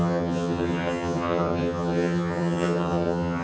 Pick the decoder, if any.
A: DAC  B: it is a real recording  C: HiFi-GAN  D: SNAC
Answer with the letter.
C